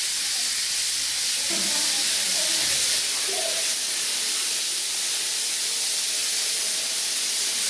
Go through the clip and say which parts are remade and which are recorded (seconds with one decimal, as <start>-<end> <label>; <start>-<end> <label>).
0.0-1.1 recorded; 1.1-2.6 remade; 2.6-7.7 recorded